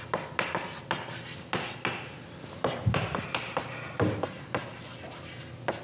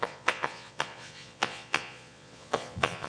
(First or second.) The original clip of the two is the first